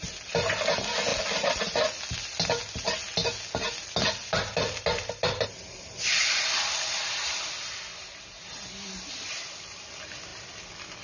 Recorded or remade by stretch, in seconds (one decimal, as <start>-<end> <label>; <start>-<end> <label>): 0.0-11.0 recorded